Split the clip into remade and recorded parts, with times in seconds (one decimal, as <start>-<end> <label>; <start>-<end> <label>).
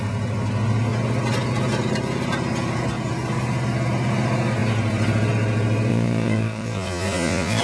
0.0-5.9 recorded; 5.9-7.6 remade